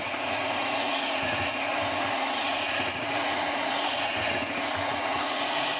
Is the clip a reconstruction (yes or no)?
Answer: yes